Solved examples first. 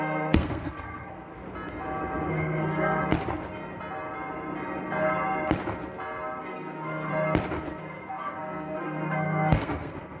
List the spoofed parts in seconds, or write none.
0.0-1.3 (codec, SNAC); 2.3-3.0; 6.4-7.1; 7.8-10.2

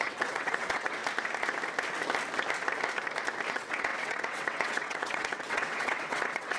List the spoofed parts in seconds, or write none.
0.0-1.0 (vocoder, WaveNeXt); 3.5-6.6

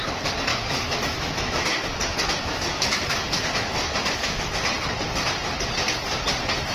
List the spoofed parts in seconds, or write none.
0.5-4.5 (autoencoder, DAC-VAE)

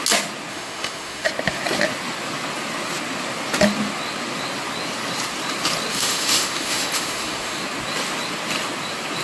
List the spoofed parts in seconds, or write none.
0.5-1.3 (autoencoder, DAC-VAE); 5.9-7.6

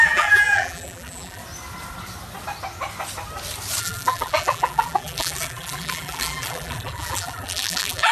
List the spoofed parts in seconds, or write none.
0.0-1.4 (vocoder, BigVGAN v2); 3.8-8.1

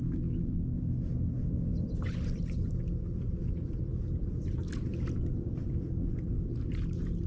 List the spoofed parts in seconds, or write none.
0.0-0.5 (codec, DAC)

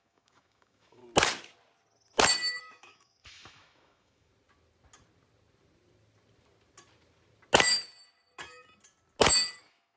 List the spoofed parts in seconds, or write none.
0.0-1.0 (autoencoder, DAC-VAE); 2.6-4.3; 9.6-10.0